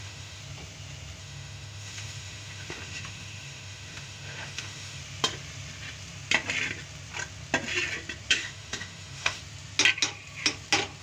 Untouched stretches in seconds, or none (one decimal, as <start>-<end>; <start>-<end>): 0.4-1.2; 5.0-8.3; 9.4-11.0